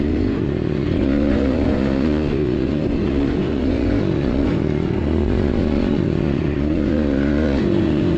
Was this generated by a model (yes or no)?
yes